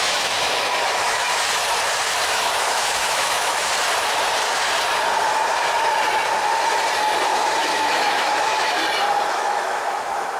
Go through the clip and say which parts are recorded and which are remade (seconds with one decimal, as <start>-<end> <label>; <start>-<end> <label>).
0.0-1.2 remade; 1.2-2.2 recorded; 2.2-3.7 remade; 3.7-7.6 recorded; 7.6-8.8 remade; 8.8-9.3 recorded; 9.3-10.4 remade